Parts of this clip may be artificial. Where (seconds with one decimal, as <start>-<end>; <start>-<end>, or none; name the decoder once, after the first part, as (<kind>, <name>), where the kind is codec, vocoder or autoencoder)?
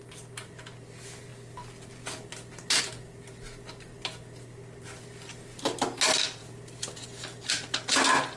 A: none